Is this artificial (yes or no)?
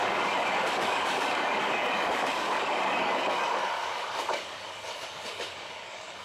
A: yes